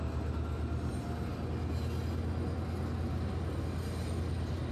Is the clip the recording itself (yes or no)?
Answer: yes